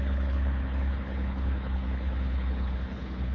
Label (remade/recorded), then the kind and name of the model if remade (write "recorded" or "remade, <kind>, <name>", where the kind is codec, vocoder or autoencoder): remade, codec, HILCodec